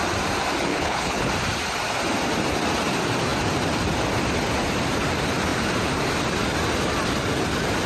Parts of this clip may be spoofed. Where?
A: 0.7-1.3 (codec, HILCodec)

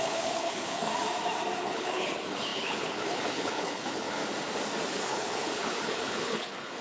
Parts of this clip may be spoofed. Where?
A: 0.0-0.9 (codec, HILCodec); 1.6-4.2; 4.9-6.8

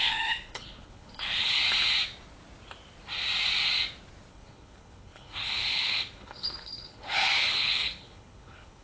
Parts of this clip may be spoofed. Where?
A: 0.0-1.6 (codec, HILCodec); 4.3-8.8

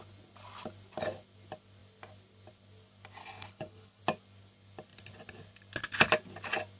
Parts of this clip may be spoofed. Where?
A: 3.2-4.0 (codec, HILCodec)

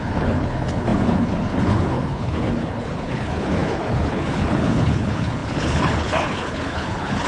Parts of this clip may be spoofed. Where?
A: 0.0-7.3 (codec, HILCodec)

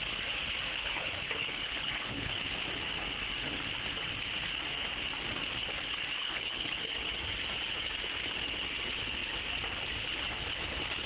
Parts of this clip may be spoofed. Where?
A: 0.8-2.3 (codec, HILCodec); 6.2-6.8